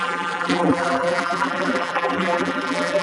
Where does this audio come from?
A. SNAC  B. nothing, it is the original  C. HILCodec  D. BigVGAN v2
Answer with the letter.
D